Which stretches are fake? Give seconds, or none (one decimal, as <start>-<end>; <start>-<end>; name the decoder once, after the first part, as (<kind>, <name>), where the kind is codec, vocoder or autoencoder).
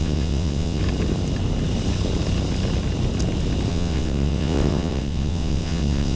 0.0-0.8 (vocoder, WaveNeXt); 3.7-6.2